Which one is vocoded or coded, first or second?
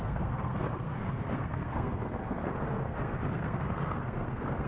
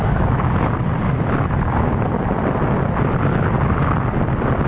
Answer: first